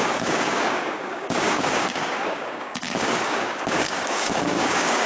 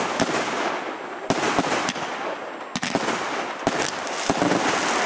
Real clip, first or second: second